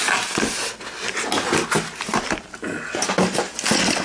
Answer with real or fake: real